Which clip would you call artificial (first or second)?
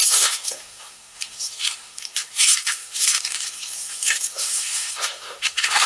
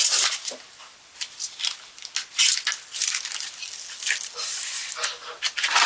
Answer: first